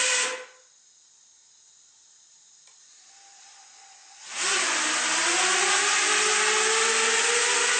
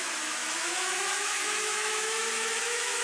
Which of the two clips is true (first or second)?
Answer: first